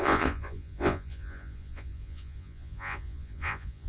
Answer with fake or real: fake